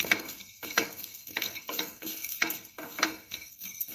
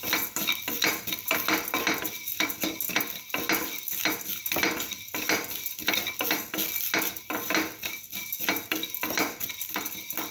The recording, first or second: second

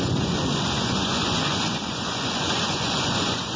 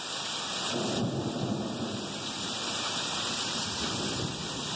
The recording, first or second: second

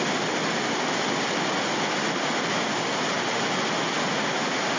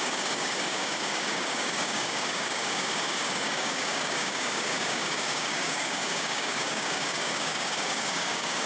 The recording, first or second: first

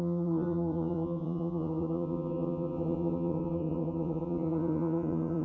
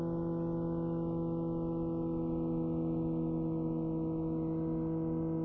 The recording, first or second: second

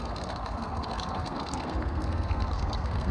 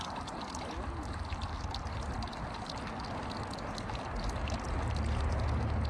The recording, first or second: second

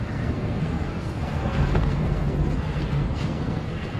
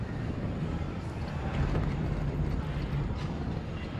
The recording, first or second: second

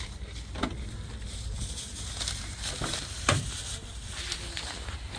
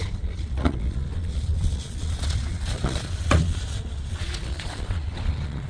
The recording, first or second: first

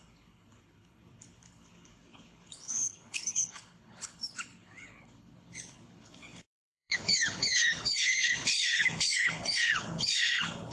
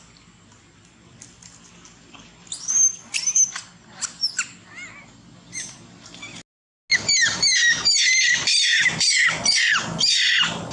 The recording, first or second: second